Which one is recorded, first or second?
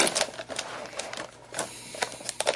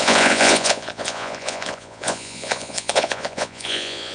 first